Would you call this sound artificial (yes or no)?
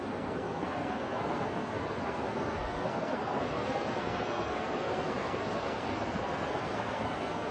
yes